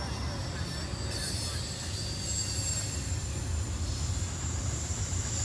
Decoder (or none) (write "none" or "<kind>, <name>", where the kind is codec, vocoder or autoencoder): none